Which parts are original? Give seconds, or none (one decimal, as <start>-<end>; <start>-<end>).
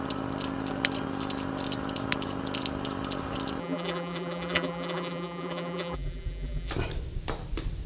0.0-3.6; 6.7-7.9